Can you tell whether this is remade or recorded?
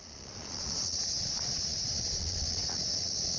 remade